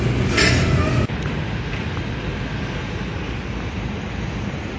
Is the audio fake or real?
real